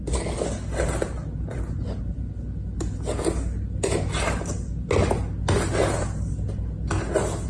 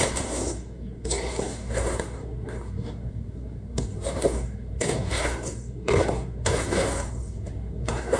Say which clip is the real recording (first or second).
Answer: first